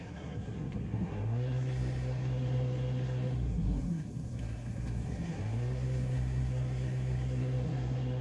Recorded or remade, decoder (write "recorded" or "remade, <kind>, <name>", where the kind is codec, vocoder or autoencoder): remade, codec, SNAC